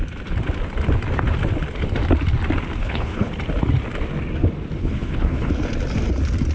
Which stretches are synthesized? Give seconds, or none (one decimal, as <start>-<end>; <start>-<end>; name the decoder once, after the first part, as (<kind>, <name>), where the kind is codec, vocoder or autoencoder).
2.8-3.3 (codec, HILCodec); 4.8-5.5